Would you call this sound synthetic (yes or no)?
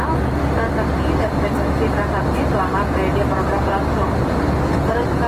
no